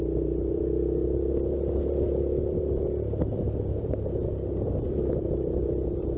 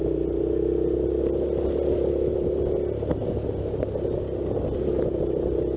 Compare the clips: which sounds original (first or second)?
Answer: second